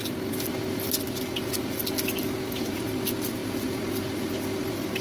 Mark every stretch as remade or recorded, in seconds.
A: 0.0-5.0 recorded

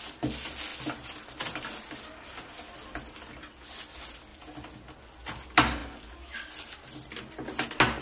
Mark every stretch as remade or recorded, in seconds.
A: 0.0-8.0 recorded

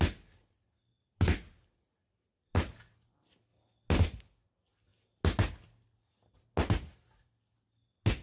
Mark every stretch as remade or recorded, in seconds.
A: 0.0-8.2 recorded

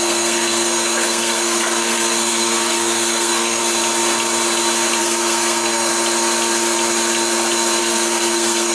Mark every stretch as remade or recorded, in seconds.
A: 0.0-3.6 remade; 3.6-5.0 recorded; 5.0-5.9 remade; 5.9-7.8 recorded; 7.8-8.7 remade

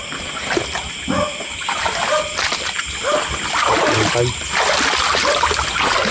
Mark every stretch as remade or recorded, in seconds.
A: 0.0-6.1 recorded

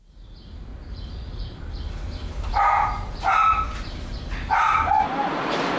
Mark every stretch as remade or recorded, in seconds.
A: 0.0-0.7 recorded; 0.7-4.2 remade; 4.2-5.8 recorded